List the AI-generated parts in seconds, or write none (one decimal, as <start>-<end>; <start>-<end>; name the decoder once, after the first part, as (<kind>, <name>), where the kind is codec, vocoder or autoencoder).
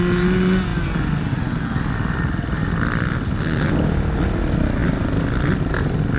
none